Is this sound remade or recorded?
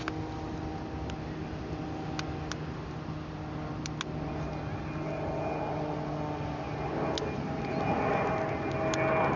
recorded